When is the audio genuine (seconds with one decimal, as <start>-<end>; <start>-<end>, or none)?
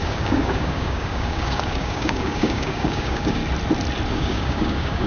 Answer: 3.4-4.1